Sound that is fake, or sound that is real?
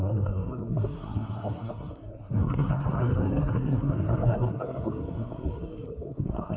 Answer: fake